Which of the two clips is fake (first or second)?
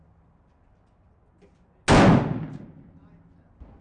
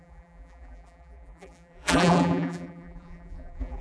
second